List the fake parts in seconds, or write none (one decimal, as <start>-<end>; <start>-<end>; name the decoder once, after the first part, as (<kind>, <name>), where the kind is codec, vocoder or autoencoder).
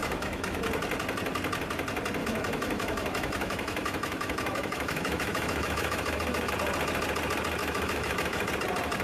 0.0-0.6 (autoencoder, DAC-VAE); 2.2-6.5; 7.6-8.5